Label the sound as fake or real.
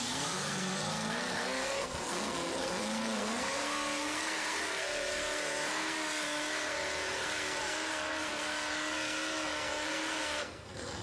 fake